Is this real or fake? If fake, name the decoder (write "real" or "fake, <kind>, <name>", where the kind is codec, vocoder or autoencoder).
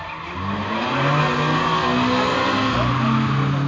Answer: real